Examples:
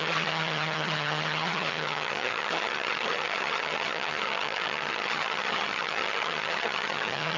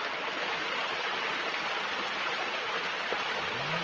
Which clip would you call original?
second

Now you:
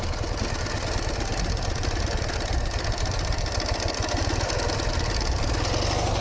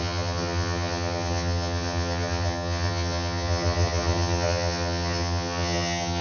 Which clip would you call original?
first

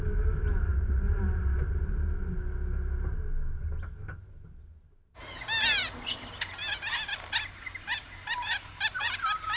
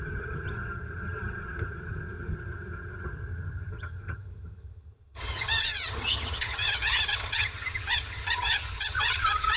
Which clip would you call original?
first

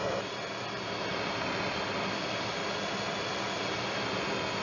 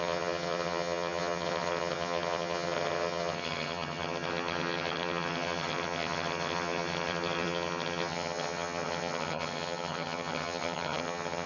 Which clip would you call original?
first